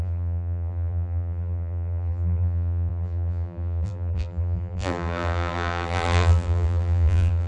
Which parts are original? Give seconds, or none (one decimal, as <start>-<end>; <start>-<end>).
none